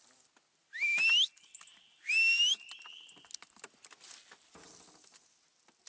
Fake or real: real